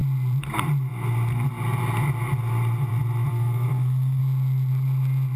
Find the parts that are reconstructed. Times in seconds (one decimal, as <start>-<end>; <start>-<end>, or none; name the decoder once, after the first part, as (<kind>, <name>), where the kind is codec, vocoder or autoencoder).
3.3-4.2 (codec, SNAC)